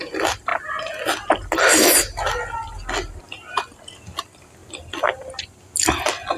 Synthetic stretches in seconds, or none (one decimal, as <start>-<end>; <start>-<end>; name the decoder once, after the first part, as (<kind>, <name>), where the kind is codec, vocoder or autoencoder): none